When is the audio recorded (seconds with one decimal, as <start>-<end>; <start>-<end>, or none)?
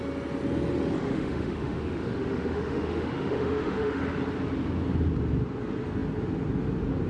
0.0-1.0; 4.0-7.1